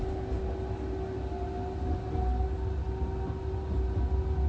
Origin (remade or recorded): recorded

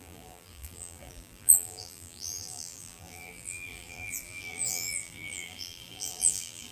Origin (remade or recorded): remade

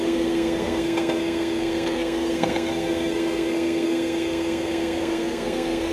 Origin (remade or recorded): remade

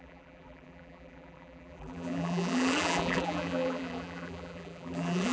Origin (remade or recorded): remade